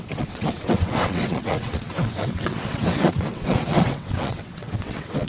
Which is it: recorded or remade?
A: remade